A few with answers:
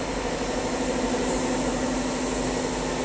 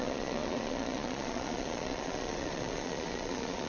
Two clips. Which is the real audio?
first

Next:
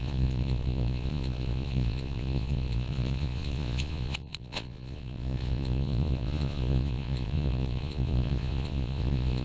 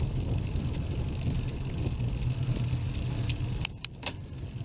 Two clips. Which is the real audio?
second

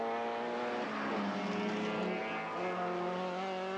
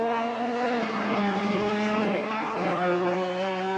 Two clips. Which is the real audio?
first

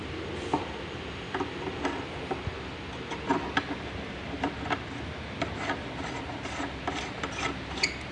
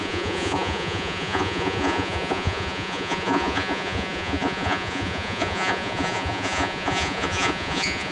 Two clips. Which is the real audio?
first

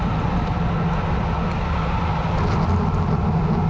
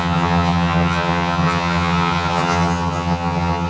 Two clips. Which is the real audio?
first